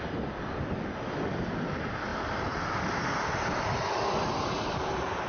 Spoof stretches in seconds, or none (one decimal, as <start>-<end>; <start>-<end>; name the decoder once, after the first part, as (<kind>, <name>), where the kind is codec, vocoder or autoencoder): none